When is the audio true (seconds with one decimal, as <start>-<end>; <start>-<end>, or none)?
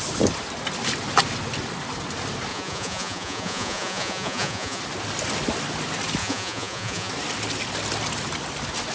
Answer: 0.0-2.5; 4.8-6.2; 7.1-8.9